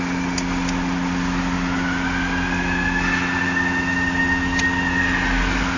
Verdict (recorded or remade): recorded